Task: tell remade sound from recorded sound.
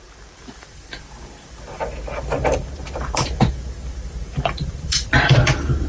remade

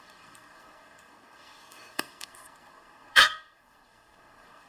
remade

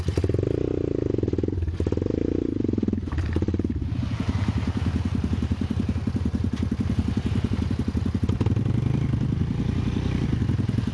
recorded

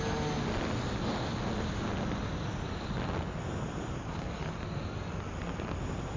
recorded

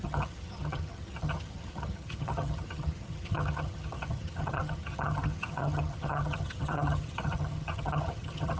remade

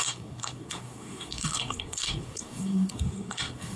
remade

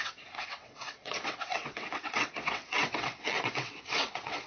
remade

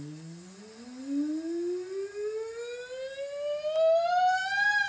recorded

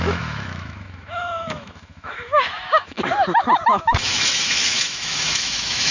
remade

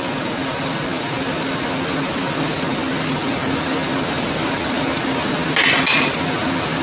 recorded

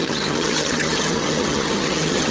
remade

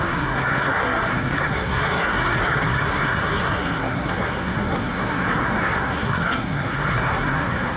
remade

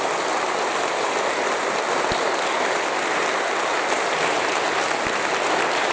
recorded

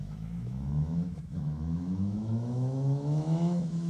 remade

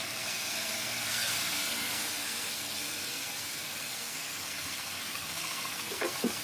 remade